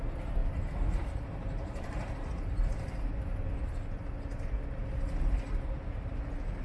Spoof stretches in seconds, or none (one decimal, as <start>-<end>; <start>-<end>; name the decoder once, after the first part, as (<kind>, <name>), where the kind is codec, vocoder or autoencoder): 0.4-2.6 (vocoder, BigVGAN v2)